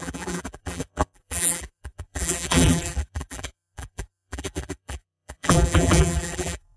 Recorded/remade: remade